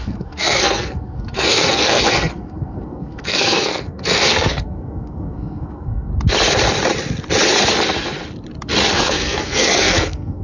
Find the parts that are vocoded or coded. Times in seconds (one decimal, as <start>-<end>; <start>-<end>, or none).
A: 0.0-6.1; 8.9-10.4